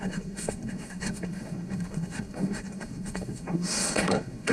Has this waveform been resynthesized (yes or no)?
yes